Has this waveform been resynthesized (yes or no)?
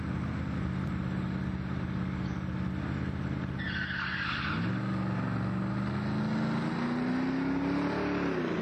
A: no